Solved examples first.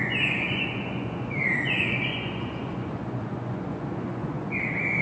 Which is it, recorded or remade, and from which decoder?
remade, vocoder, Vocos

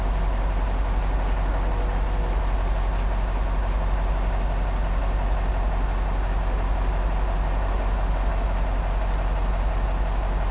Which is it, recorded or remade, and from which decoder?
recorded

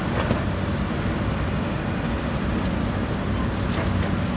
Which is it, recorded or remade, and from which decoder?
recorded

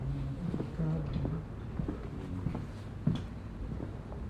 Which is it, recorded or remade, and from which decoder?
recorded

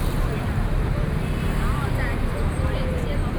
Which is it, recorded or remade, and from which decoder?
remade, vocoder, BigVGAN v2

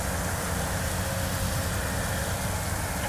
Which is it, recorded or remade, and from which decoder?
recorded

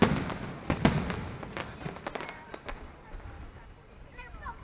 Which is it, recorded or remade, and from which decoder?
recorded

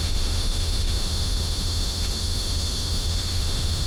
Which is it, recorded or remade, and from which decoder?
remade, autoencoder, DAC-VAE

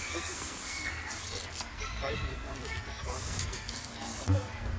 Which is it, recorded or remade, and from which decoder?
remade, codec, SNAC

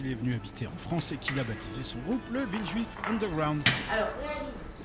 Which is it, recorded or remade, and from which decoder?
recorded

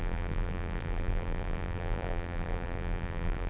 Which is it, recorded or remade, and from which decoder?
remade, vocoder, BigVGAN v2